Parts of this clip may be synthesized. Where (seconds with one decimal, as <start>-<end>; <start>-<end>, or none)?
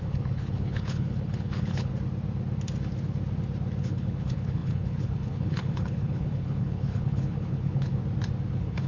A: 0.0-1.9; 3.8-8.0; 8.5-8.9